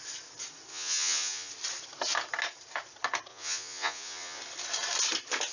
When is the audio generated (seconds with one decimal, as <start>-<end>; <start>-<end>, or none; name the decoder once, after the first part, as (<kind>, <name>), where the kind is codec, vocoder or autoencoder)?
0.7-1.5 (vocoder, Vocos); 3.3-4.4